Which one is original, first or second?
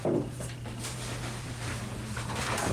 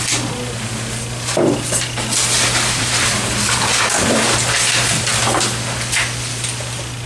second